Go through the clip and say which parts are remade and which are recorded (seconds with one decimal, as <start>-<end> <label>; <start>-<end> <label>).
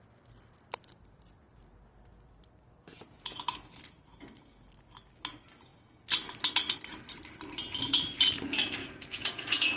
0.0-2.9 recorded; 2.9-3.7 remade; 3.7-8.8 recorded; 8.8-9.8 remade